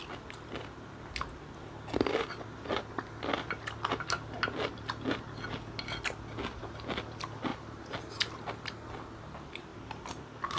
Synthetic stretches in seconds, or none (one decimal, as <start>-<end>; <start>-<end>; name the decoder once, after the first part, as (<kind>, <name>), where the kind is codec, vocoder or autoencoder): none